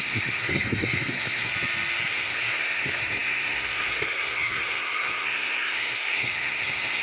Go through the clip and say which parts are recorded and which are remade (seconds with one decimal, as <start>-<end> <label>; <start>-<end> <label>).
0.0-1.5 remade; 1.5-2.1 recorded; 2.1-7.0 remade